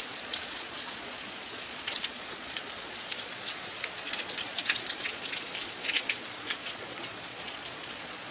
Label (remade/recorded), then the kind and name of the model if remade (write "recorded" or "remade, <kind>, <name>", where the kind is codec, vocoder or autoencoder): remade, vocoder, Vocos